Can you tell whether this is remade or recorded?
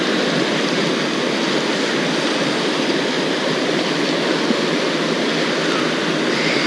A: recorded